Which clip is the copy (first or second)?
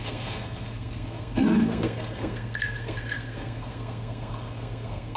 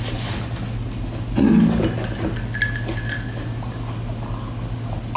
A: first